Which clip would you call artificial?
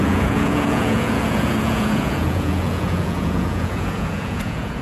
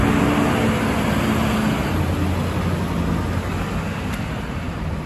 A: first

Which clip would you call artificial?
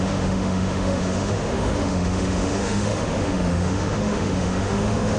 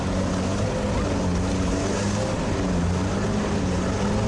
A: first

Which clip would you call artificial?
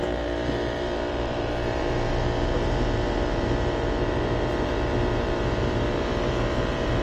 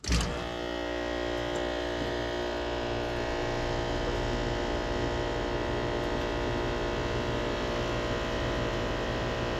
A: first